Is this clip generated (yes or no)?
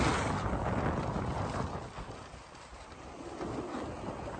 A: no